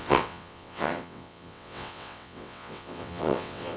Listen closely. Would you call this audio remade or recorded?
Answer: remade